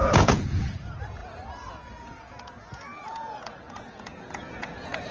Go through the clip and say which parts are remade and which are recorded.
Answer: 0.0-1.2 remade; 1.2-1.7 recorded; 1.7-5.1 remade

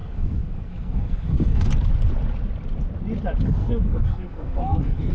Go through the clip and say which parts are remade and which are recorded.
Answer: 0.0-1.7 remade; 1.7-3.6 recorded; 3.6-5.1 remade